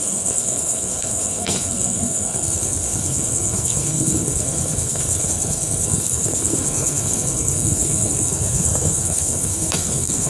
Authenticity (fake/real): fake